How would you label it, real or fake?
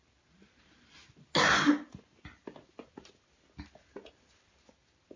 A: real